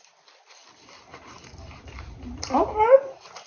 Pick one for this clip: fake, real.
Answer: real